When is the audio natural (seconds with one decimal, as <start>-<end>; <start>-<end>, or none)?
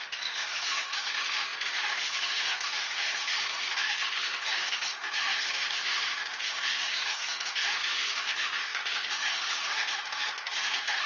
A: none